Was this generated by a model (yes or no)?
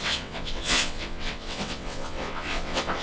yes